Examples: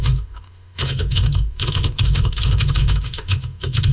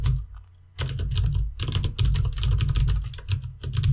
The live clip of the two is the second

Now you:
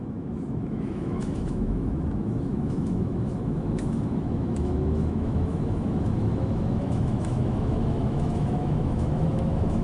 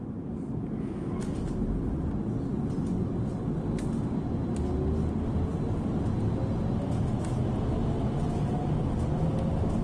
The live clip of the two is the second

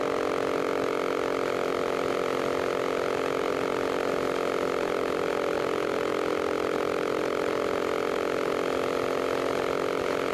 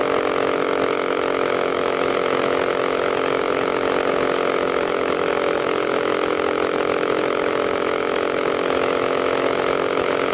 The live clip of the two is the first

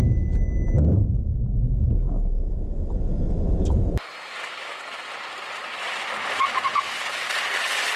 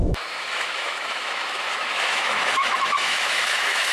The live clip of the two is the first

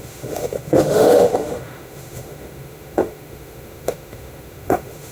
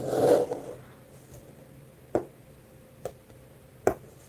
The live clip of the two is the second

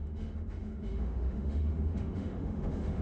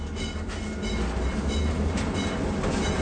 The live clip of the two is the second